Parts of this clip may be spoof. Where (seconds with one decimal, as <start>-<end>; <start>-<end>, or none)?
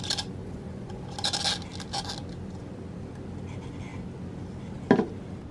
0.4-1.0